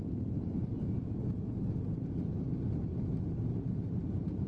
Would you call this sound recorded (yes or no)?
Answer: yes